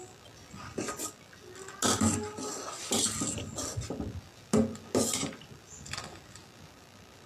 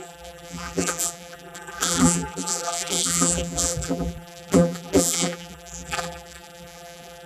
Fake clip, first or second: second